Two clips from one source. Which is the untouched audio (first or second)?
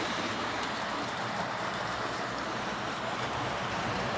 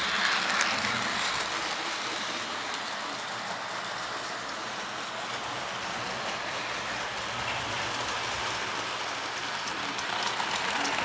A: second